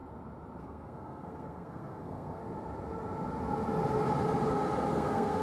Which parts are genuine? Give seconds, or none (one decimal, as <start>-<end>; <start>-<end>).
0.0-0.6; 2.4-4.9